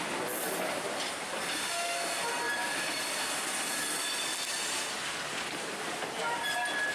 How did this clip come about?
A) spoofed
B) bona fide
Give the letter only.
B